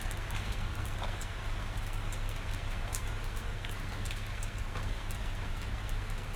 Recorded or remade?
remade